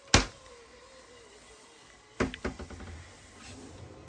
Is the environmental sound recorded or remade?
recorded